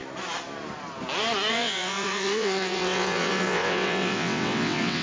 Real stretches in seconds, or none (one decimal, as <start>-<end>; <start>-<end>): 0.0-1.5